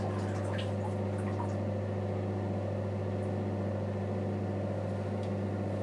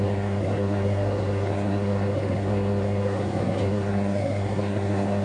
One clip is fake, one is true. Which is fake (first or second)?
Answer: second